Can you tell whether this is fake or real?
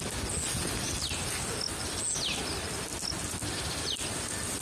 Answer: real